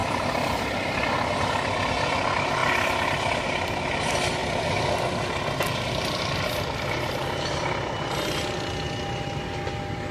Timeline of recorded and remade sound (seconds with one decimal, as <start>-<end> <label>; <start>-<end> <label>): 0.0-10.1 recorded